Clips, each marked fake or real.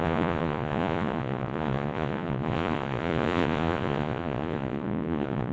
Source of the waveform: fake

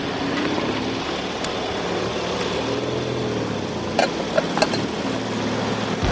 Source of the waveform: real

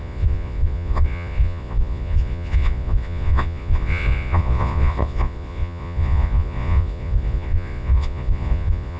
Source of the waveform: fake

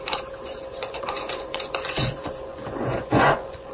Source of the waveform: fake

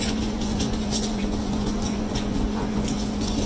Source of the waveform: fake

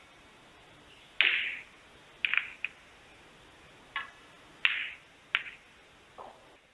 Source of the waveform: real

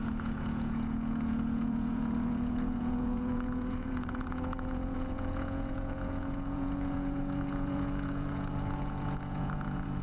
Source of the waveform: fake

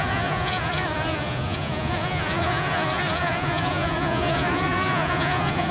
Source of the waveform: fake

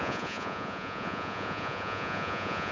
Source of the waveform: fake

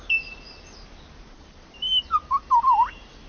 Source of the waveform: real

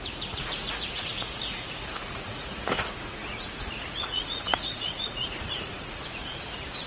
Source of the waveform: fake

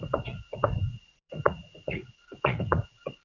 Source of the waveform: fake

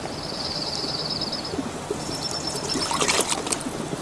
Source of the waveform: real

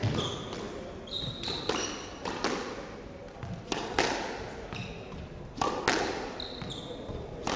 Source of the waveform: real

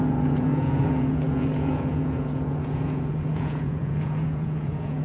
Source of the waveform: fake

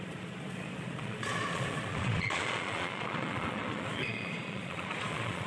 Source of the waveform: fake